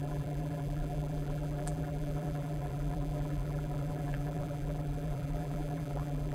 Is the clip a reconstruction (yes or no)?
yes